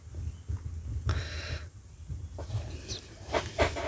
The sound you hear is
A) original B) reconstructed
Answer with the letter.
A